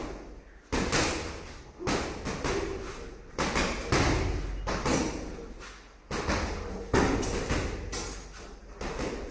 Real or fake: real